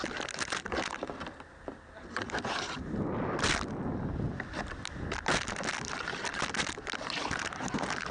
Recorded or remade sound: recorded